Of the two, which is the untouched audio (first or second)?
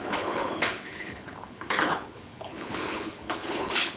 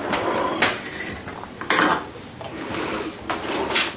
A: second